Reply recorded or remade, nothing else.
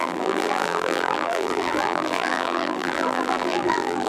remade